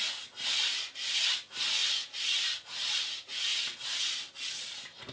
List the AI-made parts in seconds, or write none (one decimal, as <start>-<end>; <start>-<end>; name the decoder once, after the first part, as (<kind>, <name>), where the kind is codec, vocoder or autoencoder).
none